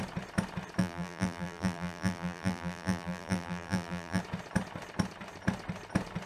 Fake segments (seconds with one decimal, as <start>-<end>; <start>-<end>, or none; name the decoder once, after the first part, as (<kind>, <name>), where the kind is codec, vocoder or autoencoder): 0.8-4.2 (vocoder, BigVGAN v2)